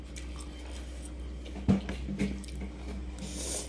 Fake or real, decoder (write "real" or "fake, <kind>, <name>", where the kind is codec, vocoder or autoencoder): real